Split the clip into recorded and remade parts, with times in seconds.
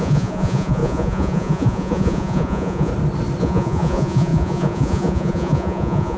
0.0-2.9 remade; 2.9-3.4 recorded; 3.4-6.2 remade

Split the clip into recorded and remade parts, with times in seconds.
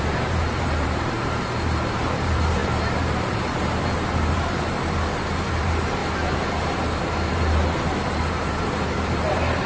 0.0-6.0 remade; 6.0-7.0 recorded; 7.0-9.7 remade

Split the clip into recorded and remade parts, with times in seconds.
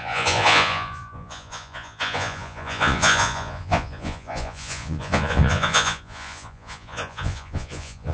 0.0-8.1 remade